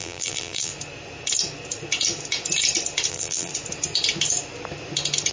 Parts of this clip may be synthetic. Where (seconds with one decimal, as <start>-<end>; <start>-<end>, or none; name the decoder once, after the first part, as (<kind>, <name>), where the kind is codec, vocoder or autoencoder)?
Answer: 0.0-0.7 (vocoder, BigVGAN v2); 3.1-3.5